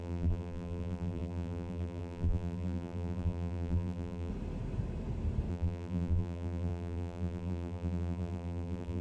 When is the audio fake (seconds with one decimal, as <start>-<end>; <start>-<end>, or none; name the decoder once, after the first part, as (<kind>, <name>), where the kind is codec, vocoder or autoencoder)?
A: 0.0-4.3 (vocoder, BigVGAN v2); 5.5-9.0